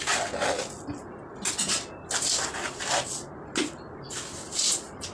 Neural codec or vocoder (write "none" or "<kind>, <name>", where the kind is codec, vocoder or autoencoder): none